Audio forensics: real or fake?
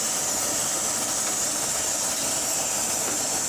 real